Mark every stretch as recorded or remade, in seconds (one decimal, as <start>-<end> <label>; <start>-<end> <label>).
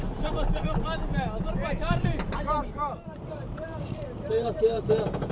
0.0-1.6 recorded; 1.6-4.8 remade; 4.8-5.3 recorded